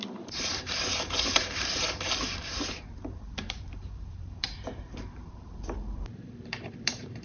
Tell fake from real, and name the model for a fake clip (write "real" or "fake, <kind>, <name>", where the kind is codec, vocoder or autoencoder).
fake, vocoder, BigVGAN v2